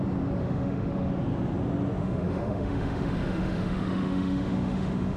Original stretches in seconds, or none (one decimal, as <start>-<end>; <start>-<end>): 0.0-0.4; 1.1-2.0